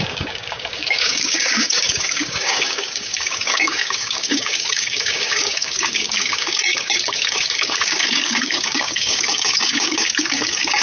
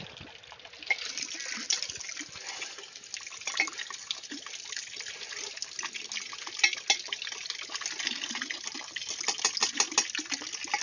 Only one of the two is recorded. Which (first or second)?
second